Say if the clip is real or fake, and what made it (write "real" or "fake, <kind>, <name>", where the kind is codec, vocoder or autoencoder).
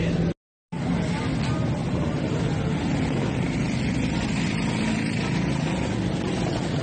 real